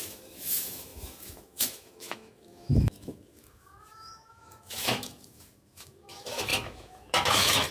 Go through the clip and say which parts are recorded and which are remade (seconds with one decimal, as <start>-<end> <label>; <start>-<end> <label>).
0.0-7.7 remade